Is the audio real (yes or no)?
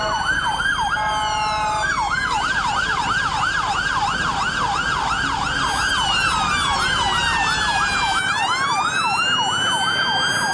yes